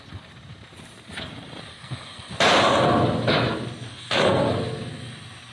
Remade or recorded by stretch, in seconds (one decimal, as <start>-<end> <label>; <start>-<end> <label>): 0.0-1.7 recorded; 1.7-2.3 remade; 2.3-3.9 recorded; 3.9-4.5 remade; 4.5-5.5 recorded